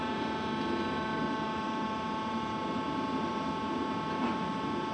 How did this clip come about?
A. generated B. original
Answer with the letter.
B